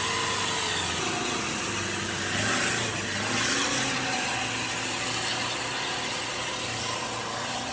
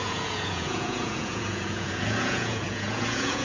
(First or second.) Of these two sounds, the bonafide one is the first